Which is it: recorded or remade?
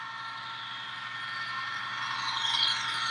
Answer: recorded